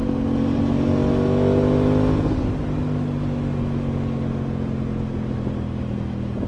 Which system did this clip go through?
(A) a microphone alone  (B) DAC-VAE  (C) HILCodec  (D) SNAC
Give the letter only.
A